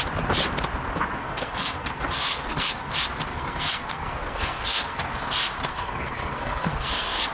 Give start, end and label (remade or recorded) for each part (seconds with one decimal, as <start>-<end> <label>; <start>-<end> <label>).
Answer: 0.0-1.2 recorded; 1.2-2.9 remade; 2.9-3.3 recorded; 3.3-5.1 remade; 5.1-5.7 recorded; 5.7-7.3 remade